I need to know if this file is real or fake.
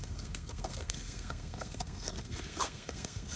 fake